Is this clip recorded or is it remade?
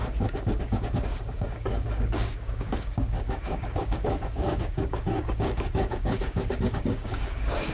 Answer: remade